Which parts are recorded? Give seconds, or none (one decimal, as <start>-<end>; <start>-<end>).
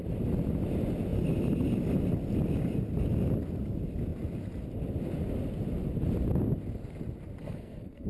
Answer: 0.0-7.4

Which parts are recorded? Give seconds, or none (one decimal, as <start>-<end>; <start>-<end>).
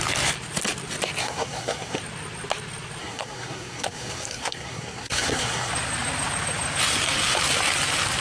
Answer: 0.0-1.2; 2.0-3.0; 5.7-8.2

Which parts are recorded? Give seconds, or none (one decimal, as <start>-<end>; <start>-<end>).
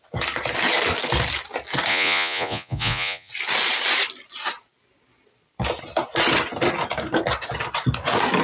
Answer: 0.0-1.9; 3.3-8.4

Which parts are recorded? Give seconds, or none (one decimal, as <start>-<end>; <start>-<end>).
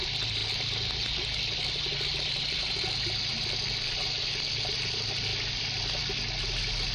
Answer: 0.0-6.9